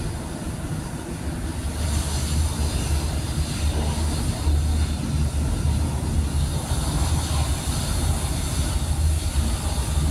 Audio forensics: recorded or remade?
recorded